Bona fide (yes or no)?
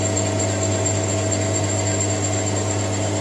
yes